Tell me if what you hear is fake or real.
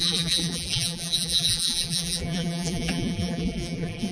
fake